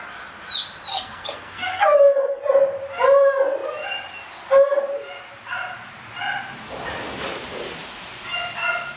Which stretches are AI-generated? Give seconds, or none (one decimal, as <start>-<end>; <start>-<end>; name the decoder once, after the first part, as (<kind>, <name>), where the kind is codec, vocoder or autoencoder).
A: 0.9-2.4 (codec, SNAC)